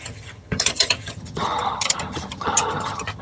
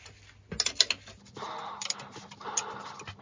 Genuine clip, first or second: second